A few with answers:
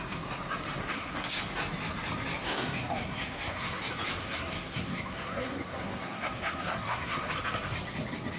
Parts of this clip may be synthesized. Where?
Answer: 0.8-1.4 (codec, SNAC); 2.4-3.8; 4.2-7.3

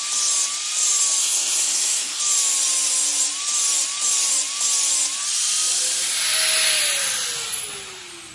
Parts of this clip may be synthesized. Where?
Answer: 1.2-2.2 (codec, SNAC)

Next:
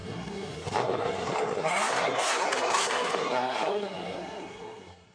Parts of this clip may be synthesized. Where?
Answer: 0.0-5.1 (codec, SNAC)

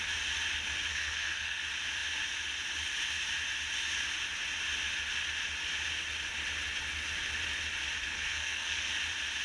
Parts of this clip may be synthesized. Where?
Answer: 0.9-1.6 (codec, SNAC); 8.0-8.9

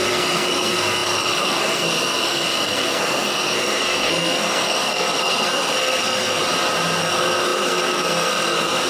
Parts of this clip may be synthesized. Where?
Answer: 0.0-6.4 (codec, SNAC); 7.0-8.9

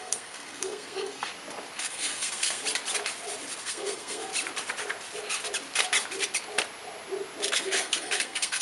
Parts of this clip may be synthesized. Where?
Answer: 0.0-1.3 (codec, SNAC); 1.8-2.6; 3.6-4.3; 7.4-8.6